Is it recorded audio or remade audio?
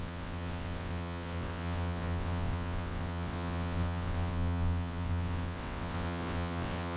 remade